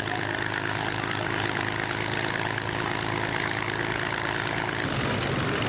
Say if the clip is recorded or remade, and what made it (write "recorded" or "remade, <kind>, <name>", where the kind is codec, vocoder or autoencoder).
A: recorded